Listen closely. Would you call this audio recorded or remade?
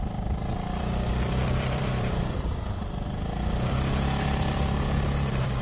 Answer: remade